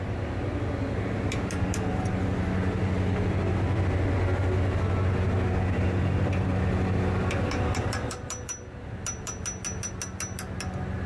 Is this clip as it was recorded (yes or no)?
yes